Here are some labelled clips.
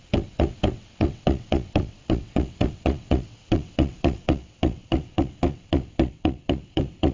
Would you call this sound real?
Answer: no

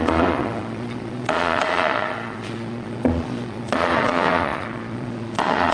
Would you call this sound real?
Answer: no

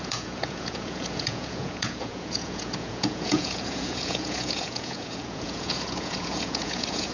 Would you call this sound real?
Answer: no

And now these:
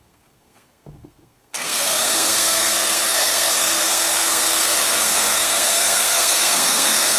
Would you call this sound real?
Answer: no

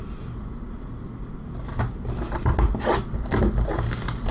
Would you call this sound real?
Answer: yes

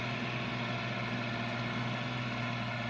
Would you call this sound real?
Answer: yes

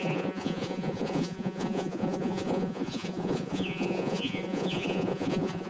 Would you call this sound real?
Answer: no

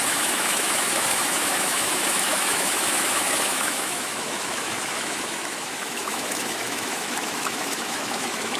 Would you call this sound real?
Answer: no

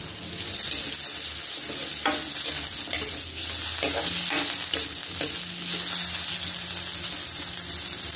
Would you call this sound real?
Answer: yes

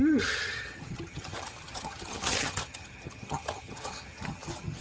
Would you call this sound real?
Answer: no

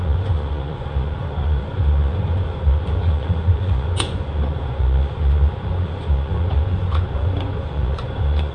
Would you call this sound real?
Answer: no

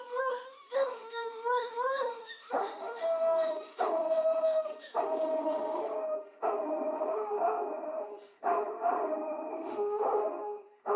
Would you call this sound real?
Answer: no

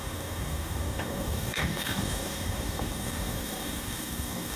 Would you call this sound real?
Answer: no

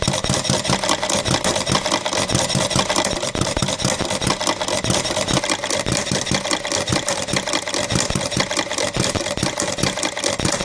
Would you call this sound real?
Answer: yes